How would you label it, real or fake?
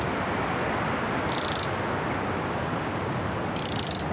real